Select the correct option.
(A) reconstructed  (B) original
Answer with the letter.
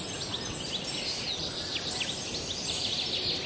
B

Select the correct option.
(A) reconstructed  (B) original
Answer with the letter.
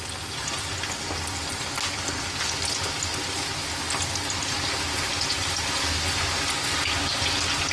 B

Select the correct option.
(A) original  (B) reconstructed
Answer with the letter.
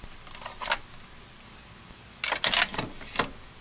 A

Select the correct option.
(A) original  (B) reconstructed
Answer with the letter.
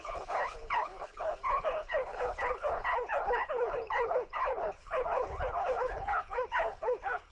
B